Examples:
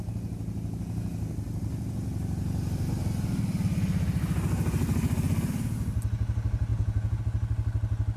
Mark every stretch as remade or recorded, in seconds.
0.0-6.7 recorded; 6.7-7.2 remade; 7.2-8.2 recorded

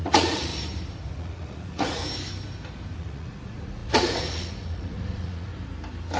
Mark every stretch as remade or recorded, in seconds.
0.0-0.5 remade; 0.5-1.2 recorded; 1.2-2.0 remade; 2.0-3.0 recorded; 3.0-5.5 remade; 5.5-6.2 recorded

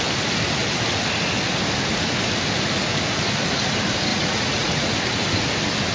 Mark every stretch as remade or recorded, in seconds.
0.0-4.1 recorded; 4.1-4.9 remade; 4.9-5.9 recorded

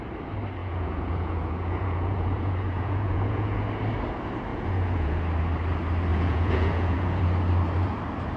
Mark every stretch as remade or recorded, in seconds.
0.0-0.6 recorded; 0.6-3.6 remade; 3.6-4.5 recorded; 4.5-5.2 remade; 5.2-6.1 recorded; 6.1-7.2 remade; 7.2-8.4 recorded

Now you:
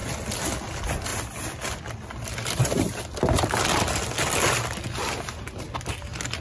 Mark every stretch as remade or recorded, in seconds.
0.0-6.4 recorded